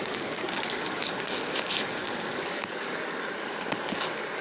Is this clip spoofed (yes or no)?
yes